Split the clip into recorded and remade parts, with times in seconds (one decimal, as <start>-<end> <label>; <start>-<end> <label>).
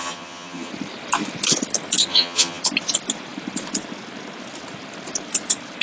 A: 0.0-0.7 remade; 0.7-2.1 recorded; 2.1-2.6 remade; 2.6-5.8 recorded